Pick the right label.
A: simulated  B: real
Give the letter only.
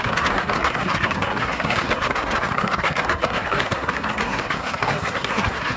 A